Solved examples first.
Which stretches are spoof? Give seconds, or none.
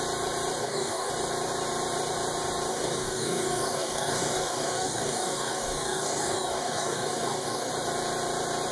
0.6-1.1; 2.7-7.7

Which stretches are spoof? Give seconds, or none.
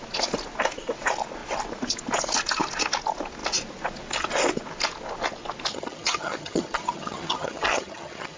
5.7-8.4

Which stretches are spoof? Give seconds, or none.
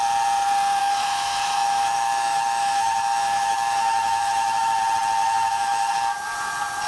0.8-4.8; 5.2-5.9